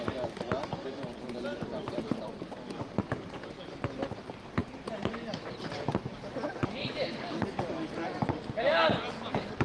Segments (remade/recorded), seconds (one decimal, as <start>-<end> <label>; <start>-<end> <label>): 0.0-9.6 recorded